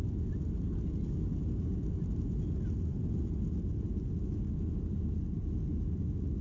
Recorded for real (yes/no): yes